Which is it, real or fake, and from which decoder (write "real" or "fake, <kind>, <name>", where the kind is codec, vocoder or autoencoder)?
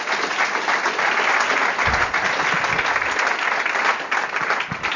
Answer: real